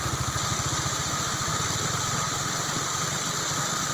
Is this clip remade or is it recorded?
recorded